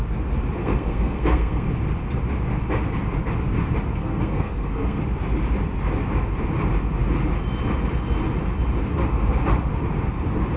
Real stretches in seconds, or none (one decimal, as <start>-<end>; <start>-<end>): 0.0-0.6; 1.7-4.0; 5.0-10.6